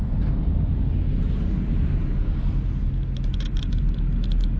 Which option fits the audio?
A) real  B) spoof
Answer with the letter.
A